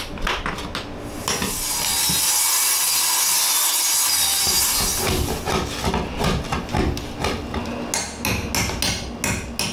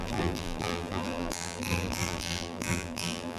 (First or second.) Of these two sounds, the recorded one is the first